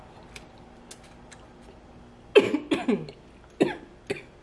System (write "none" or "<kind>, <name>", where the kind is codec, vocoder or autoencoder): none